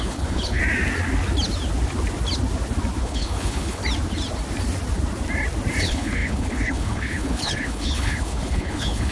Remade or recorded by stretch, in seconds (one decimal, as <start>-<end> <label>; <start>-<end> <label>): 0.0-0.6 remade; 0.6-3.0 recorded; 3.0-3.8 remade; 3.8-5.8 recorded; 5.8-9.1 remade